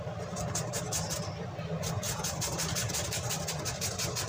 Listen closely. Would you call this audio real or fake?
real